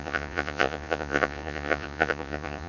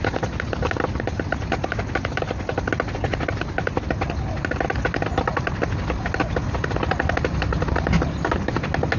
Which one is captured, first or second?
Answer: second